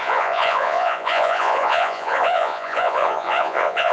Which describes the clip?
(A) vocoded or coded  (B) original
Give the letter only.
A